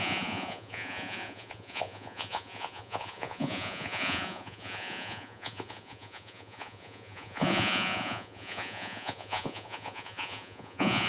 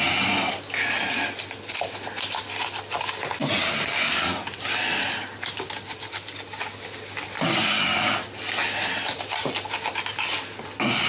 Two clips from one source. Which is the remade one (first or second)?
first